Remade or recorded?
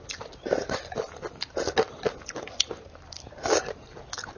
recorded